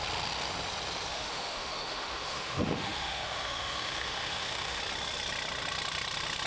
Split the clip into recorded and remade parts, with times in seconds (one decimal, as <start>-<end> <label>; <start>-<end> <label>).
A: 0.0-1.1 recorded; 1.1-4.8 remade; 4.8-6.5 recorded